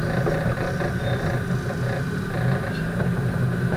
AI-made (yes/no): no